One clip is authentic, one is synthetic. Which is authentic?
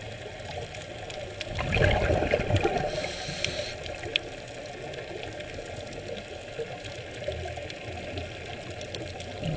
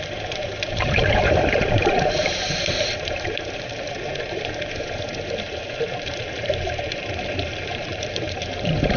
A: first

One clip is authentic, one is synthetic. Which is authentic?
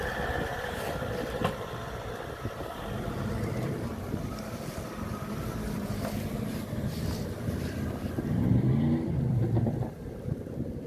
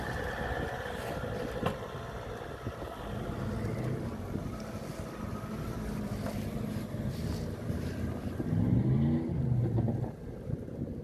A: second